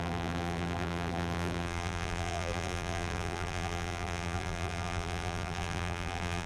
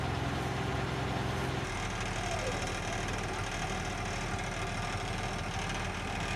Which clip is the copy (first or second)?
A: first